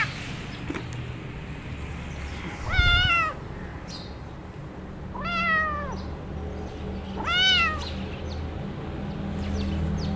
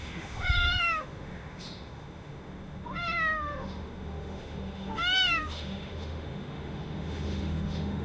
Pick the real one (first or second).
first